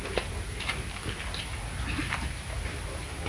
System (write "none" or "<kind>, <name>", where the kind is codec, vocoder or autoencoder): none